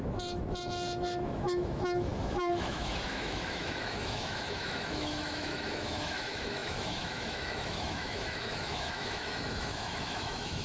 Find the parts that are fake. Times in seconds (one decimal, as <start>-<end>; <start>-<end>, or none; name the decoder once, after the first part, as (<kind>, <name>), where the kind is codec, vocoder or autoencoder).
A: 0.0-10.6 (autoencoder, DAC-VAE)

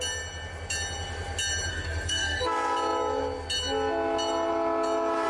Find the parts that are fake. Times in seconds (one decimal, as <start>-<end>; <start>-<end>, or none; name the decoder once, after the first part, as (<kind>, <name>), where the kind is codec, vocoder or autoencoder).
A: 1.7-2.4 (codec, SNAC)

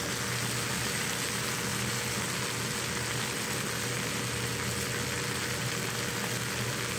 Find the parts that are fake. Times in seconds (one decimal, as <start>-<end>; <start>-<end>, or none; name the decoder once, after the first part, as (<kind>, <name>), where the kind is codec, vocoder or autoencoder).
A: none

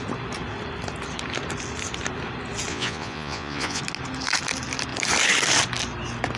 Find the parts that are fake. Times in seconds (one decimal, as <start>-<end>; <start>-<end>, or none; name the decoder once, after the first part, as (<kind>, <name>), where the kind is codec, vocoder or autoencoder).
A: 2.7-3.8 (vocoder, Vocos)

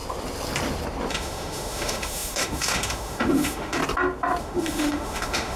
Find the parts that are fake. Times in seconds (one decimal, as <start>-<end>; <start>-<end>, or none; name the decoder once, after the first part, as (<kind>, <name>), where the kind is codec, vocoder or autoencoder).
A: 1.1-3.8 (autoencoder, DAC-VAE); 4.4-5.6

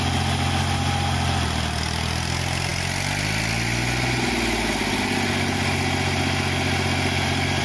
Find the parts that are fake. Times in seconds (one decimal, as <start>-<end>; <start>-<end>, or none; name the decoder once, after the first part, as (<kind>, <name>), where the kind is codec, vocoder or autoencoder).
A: none

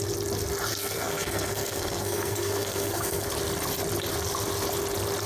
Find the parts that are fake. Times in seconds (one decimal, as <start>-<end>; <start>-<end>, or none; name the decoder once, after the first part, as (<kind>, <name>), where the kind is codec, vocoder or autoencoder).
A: 0.7-3.3 (codec, SNAC)